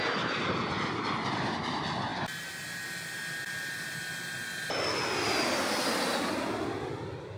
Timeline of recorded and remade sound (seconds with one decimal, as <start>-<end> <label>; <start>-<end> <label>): 0.0-7.4 recorded